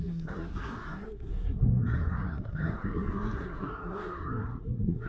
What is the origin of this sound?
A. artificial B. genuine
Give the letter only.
A